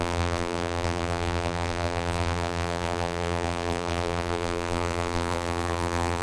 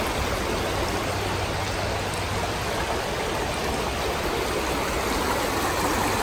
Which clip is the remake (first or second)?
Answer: first